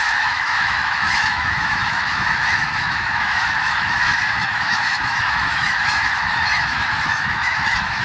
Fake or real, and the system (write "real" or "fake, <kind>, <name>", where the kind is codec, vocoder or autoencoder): fake, autoencoder, DAC-VAE